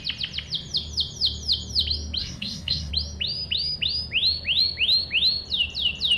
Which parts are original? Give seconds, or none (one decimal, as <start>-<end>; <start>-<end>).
0.0-2.2; 2.9-6.2